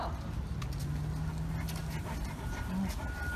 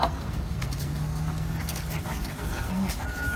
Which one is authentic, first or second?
first